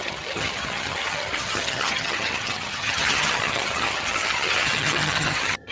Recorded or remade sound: remade